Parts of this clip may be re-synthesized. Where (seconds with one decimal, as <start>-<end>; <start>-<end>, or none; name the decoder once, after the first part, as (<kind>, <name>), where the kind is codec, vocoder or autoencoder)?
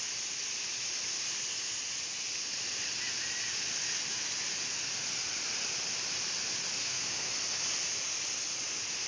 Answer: 6.8-7.3 (codec, SNAC)